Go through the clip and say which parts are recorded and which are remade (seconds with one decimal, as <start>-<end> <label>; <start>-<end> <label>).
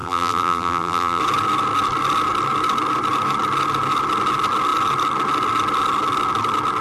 0.0-1.2 remade; 1.2-6.8 recorded